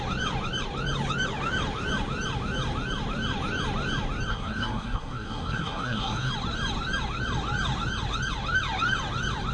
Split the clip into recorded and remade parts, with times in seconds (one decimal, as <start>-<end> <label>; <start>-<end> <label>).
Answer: 0.0-4.3 recorded; 4.3-6.3 remade; 6.3-9.5 recorded